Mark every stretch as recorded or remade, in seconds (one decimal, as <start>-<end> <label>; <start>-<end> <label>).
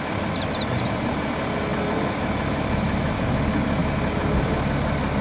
0.0-5.2 recorded